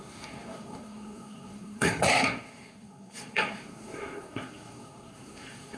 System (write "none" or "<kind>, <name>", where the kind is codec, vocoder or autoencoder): codec, SNAC